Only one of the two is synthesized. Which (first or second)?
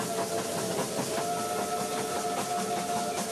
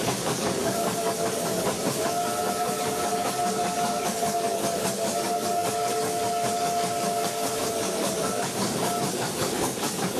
second